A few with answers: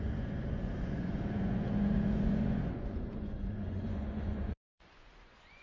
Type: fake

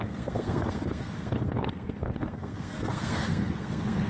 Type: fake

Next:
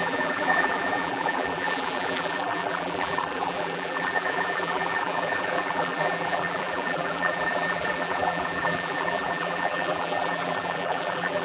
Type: fake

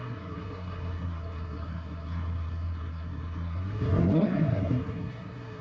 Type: fake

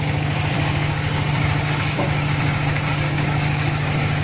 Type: fake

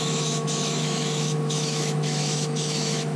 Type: fake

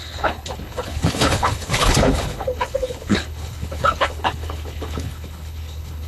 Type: fake